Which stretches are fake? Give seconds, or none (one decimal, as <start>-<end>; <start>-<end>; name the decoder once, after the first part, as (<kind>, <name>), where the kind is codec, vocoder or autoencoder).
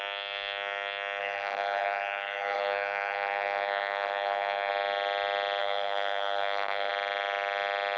1.2-4.7 (codec, SNAC); 5.6-6.9